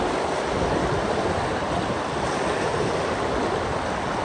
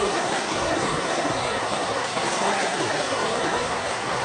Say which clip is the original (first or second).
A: first